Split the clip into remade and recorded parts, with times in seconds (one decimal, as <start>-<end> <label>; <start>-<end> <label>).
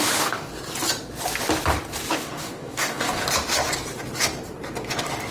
0.0-0.5 remade; 0.5-2.1 recorded; 2.1-3.2 remade; 3.2-5.3 recorded